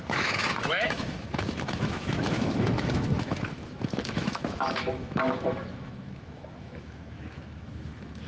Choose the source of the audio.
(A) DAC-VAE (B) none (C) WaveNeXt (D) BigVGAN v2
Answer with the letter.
A